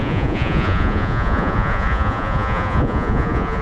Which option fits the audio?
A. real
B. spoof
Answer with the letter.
B